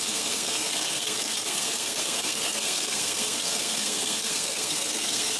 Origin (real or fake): fake